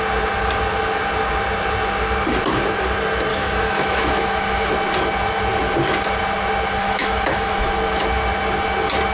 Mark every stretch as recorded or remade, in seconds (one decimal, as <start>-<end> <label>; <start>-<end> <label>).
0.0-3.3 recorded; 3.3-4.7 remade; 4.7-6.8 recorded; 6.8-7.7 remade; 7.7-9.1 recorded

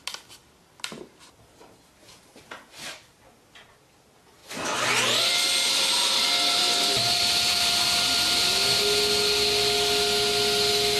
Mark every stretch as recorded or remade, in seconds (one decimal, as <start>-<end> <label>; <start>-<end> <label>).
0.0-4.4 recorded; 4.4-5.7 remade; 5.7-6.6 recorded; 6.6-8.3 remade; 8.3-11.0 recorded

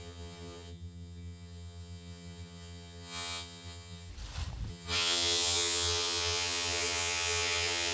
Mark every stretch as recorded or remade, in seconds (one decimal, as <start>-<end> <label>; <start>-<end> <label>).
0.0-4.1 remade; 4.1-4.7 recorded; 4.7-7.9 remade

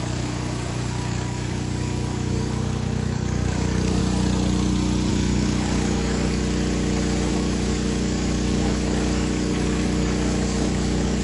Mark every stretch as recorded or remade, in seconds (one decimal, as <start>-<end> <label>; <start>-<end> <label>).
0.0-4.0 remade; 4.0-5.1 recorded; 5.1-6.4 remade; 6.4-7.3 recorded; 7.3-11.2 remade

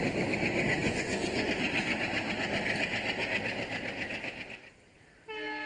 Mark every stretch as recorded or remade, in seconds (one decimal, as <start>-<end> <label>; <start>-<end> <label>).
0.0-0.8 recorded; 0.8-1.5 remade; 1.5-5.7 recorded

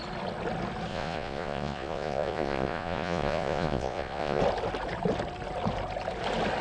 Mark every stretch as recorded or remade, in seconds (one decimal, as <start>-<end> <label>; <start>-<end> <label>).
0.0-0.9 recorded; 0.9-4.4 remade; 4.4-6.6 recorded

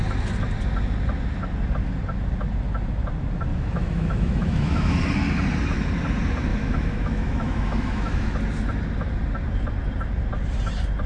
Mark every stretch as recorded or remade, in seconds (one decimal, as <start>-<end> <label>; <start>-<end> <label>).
0.0-3.5 recorded; 3.5-5.0 remade; 5.0-6.5 recorded; 6.5-8.3 remade; 8.3-11.1 recorded

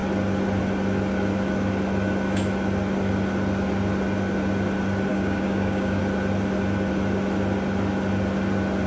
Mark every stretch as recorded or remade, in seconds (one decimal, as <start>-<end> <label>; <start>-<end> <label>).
0.0-5.1 recorded; 5.1-6.0 remade; 6.0-8.9 recorded